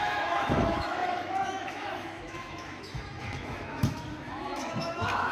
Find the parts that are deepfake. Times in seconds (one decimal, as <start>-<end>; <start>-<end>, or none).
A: 0.0-5.3